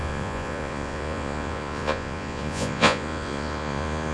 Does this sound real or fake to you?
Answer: fake